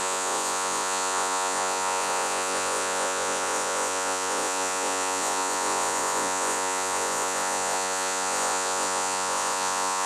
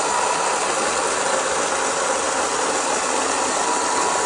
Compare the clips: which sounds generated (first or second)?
first